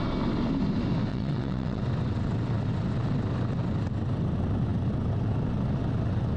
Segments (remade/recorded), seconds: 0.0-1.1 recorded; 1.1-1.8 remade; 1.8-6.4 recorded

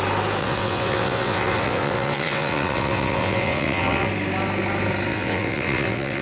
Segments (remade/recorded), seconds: 0.0-0.4 recorded; 0.4-4.1 remade; 4.1-5.1 recorded; 5.1-6.2 remade

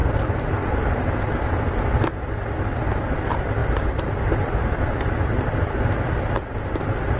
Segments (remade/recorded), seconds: 0.0-3.6 recorded; 3.6-6.8 remade; 6.8-7.2 recorded

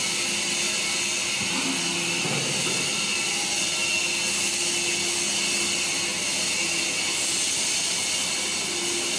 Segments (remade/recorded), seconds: 0.0-9.2 recorded

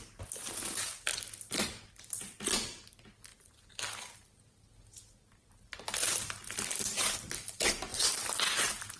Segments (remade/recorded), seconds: 0.0-9.0 recorded